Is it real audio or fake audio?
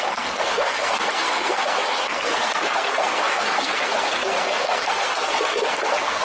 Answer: fake